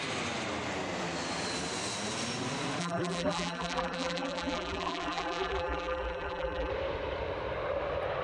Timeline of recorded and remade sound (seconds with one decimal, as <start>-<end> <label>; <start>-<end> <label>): 0.0-2.8 recorded; 2.8-6.7 remade; 6.7-8.2 recorded